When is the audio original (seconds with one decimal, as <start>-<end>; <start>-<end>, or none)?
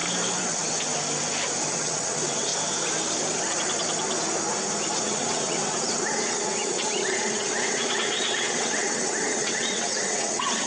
0.0-1.7; 2.5-5.0